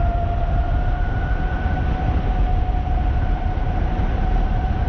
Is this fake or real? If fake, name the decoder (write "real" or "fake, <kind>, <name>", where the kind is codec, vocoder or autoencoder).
real